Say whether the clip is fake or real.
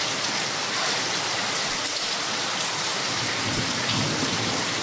fake